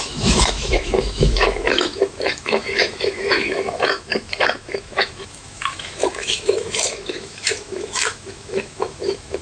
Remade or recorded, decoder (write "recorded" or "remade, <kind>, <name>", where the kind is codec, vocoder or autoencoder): remade, autoencoder, DAC-VAE